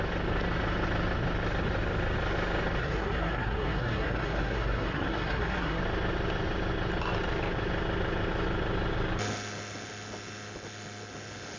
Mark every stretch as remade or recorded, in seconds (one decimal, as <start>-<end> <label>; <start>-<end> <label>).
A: 0.0-2.8 recorded; 2.8-5.8 remade; 5.8-11.6 recorded